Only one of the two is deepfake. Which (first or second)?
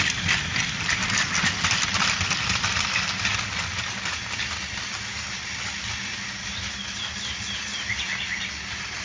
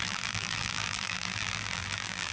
second